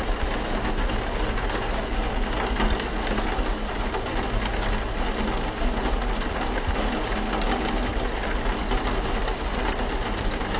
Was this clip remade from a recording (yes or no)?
no